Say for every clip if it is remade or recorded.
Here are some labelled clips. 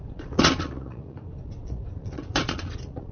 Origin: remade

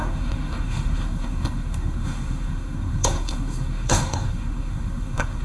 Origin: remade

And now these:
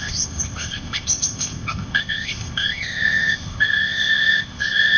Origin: remade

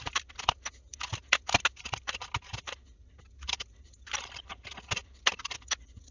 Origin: recorded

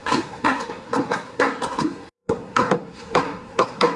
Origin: remade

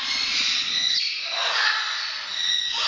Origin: recorded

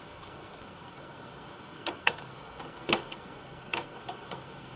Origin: remade